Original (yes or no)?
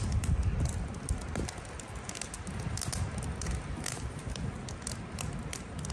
yes